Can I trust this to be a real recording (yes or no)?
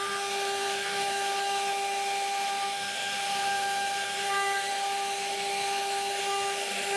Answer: no